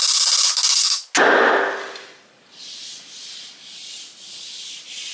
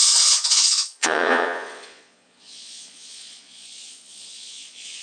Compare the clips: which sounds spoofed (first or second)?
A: second